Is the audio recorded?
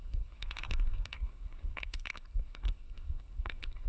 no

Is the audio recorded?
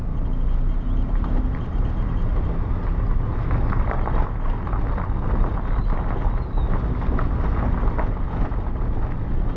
yes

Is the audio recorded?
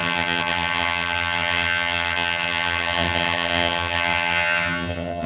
no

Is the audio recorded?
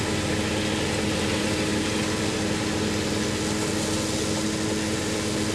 yes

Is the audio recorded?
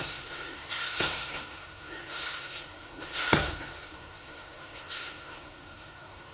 no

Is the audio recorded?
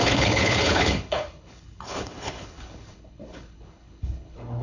no